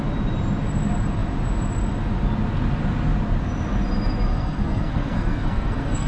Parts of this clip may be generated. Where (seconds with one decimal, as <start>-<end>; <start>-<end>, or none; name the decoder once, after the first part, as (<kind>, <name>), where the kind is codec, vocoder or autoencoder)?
4.3-6.1 (codec, SNAC)